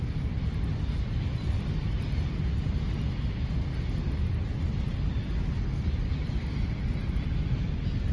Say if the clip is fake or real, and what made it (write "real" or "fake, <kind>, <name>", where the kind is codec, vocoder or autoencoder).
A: real